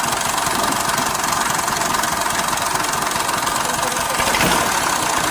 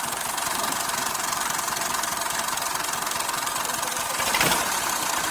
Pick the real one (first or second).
first